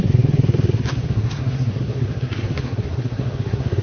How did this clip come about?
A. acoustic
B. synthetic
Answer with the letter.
B